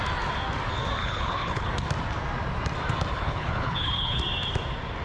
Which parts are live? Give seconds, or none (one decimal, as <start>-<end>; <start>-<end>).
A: 0.0-1.0; 1.7-3.1; 4.2-5.0